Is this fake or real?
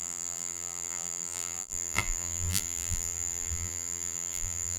fake